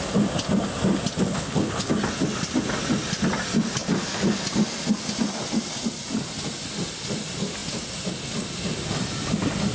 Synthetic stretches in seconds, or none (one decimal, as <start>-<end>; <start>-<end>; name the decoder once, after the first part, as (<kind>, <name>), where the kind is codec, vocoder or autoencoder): 1.3-1.9 (codec, HILCodec)